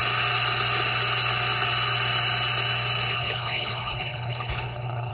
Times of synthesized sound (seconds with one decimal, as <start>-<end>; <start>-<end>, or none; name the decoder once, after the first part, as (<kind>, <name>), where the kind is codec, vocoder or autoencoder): 3.1-5.1 (codec, HILCodec)

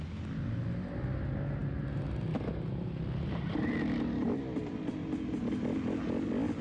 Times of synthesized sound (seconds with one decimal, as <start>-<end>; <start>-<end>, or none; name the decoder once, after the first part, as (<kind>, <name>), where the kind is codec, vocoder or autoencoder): none

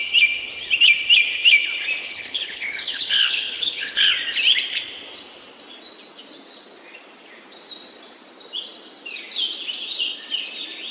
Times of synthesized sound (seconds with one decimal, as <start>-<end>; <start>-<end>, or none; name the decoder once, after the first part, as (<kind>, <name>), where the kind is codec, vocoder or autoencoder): 2.0-4.1 (codec, HILCodec)

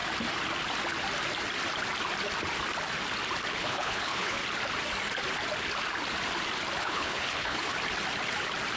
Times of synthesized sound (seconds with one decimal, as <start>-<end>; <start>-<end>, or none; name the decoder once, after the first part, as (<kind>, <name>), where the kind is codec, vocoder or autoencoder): 3.5-4.4 (codec, HILCodec); 6.8-7.7

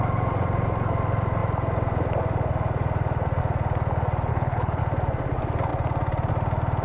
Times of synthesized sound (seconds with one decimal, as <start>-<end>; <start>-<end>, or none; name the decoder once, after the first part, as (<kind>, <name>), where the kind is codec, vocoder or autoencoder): 4.3-4.8 (codec, HILCodec)

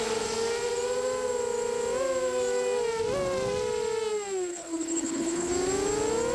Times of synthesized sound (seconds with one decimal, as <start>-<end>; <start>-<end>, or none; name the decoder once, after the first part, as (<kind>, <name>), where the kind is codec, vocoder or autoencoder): 4.5-5.5 (codec, HILCodec)